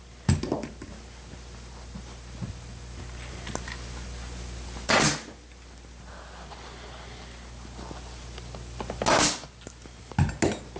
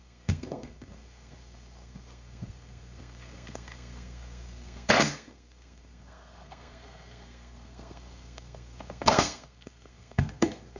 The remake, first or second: second